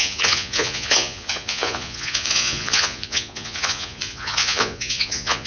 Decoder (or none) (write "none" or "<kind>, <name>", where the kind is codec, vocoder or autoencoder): vocoder, Vocos